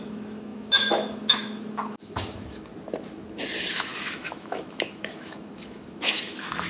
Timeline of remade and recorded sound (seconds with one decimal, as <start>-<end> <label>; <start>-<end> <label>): 0.0-2.7 remade; 2.7-3.7 recorded; 3.7-6.7 remade